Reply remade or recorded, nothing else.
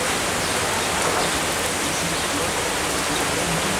recorded